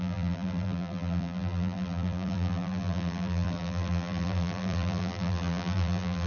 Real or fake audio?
fake